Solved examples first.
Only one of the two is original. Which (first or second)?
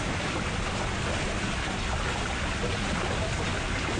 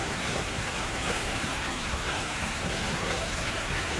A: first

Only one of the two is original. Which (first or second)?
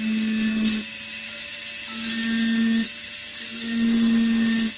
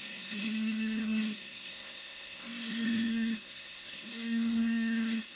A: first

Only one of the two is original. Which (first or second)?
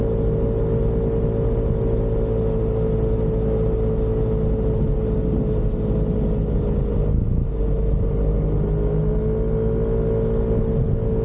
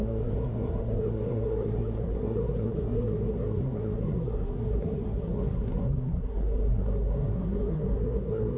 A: first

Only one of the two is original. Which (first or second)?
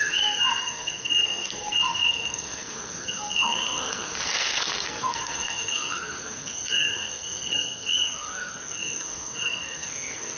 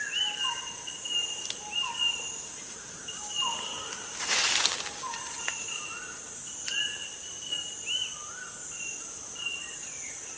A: second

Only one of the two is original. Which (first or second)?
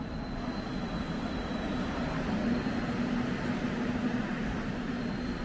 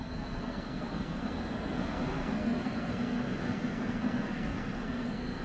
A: first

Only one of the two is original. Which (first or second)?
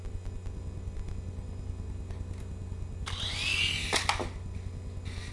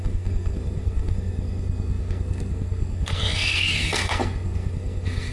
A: first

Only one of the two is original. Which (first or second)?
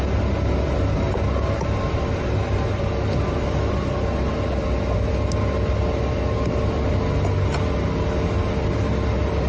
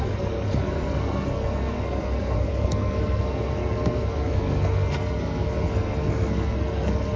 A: first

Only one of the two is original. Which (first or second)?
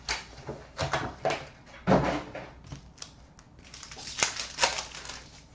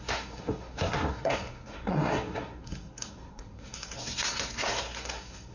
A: first